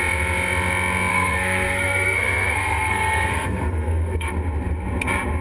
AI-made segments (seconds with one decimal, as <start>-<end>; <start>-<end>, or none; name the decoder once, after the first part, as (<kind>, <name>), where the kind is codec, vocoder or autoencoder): 1.1-4.3 (codec, SNAC)